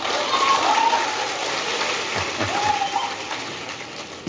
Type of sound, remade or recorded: recorded